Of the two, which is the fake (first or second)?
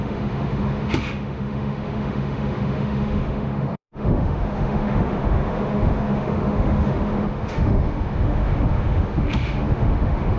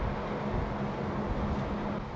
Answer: first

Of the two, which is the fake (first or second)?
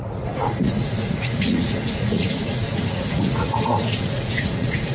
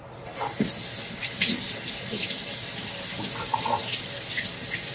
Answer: first